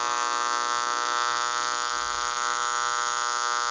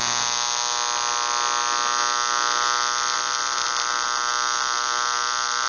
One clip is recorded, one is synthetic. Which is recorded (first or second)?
second